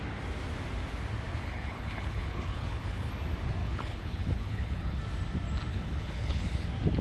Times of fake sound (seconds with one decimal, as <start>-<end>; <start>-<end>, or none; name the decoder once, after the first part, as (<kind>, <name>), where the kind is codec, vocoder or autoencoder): 1.4-3.1 (codec, HILCodec); 3.6-5.0; 5.7-6.5